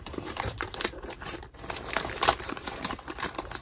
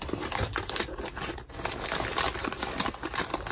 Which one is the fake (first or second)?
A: first